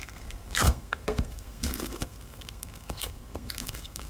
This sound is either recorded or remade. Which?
remade